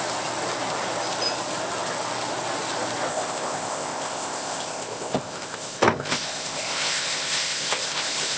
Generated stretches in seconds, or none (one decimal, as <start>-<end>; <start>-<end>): 3.1-8.4